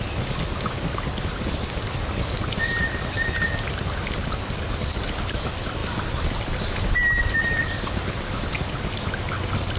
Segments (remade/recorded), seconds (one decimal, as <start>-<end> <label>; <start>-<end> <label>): 0.0-9.8 recorded